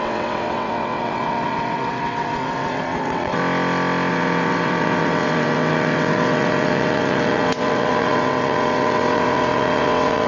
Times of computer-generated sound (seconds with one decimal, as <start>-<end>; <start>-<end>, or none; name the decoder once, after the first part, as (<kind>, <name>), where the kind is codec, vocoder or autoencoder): 0.0-3.4 (vocoder, WaveNeXt); 4.1-10.3